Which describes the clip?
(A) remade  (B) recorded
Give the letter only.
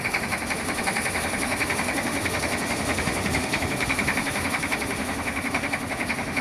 A